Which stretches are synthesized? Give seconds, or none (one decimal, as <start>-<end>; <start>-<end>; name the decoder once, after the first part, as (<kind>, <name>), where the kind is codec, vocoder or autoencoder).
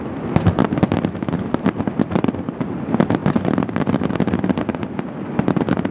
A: none